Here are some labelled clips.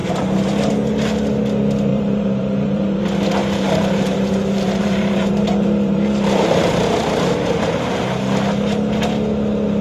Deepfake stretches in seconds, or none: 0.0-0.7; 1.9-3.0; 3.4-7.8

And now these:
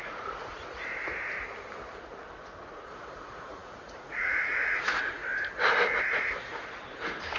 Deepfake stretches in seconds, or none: 0.0-1.1; 2.6-5.2; 6.0-7.4

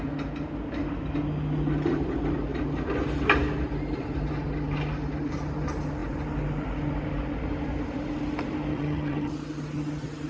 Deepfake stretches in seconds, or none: 8.7-9.3

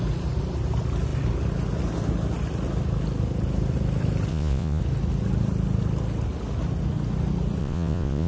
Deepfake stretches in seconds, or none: 4.3-4.8; 7.6-8.3

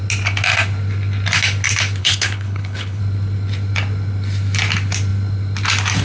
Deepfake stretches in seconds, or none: 2.0-3.0